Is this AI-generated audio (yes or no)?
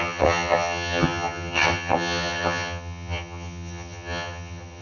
yes